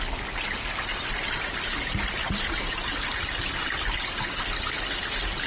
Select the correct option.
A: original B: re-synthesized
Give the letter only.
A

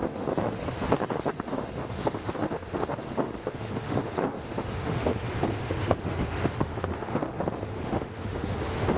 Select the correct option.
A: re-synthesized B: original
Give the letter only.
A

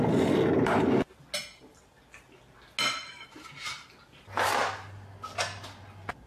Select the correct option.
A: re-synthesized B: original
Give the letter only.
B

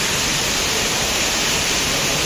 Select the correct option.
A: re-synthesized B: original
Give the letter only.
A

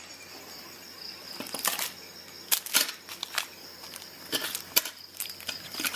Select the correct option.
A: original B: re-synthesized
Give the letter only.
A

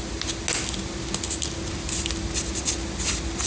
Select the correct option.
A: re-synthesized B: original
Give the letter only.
B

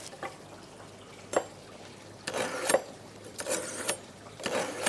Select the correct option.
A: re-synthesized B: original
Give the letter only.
A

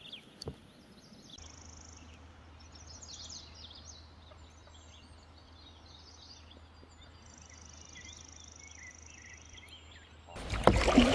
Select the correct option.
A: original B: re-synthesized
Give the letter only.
A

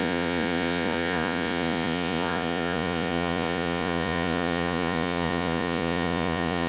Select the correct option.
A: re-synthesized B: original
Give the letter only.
A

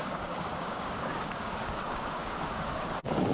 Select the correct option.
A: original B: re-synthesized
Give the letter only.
B